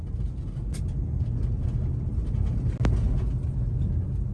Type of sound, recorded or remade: recorded